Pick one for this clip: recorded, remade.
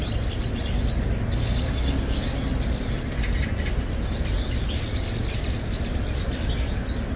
recorded